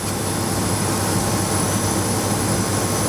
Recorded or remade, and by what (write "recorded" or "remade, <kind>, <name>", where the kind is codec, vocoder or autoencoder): recorded